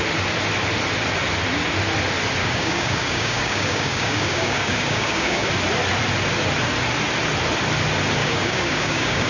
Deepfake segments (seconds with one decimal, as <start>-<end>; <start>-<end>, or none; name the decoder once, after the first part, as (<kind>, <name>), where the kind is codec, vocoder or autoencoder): 2.4-5.5 (codec, DAC); 8.2-9.3

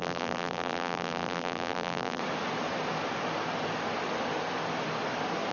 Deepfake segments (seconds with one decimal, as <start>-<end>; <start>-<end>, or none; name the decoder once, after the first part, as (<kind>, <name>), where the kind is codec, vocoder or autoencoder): 0.0-2.2 (vocoder, BigVGAN v2)

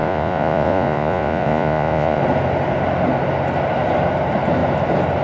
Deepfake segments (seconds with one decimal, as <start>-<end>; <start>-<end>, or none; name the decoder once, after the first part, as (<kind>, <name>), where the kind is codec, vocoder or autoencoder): 0.0-2.2 (vocoder, Vocos)

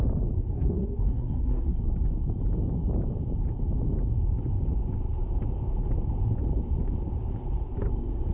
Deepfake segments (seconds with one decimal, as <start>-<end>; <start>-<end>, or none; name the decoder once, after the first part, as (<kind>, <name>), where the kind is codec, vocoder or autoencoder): 0.4-1.8 (codec, SNAC)